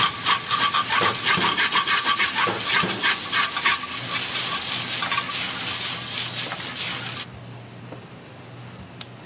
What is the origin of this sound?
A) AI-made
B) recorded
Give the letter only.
B